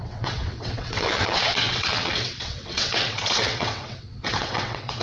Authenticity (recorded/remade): remade